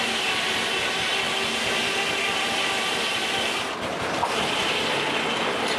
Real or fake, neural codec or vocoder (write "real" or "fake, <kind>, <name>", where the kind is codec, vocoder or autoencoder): real